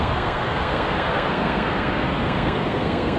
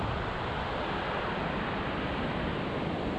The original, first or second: second